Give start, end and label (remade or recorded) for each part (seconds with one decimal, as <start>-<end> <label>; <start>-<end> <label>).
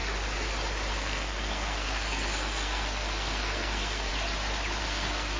0.0-0.9 recorded; 0.9-4.1 remade; 4.1-4.8 recorded; 4.8-5.4 remade